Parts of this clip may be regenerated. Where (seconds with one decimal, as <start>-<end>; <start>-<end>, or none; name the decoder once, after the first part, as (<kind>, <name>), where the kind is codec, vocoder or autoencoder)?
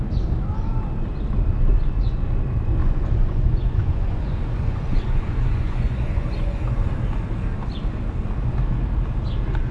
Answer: 2.8-6.9 (vocoder, Vocos)